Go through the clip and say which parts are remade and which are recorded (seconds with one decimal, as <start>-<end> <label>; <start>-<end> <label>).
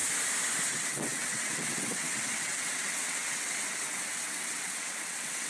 0.0-0.7 recorded; 0.7-5.5 remade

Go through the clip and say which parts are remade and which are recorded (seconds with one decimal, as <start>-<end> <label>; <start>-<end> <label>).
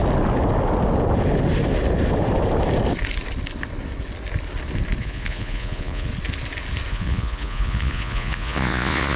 0.0-5.0 recorded; 5.0-6.1 remade; 6.1-6.9 recorded; 6.9-9.2 remade